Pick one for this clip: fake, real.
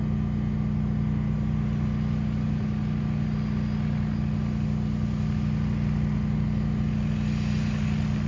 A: real